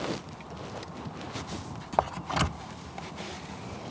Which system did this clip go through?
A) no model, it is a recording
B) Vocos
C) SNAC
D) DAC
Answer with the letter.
A